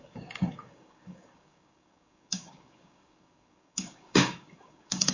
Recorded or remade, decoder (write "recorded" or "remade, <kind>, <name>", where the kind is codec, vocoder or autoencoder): remade, codec, DAC